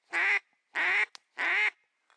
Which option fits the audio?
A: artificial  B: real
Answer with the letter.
B